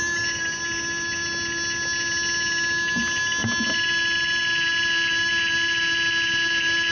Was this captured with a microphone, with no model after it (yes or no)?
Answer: yes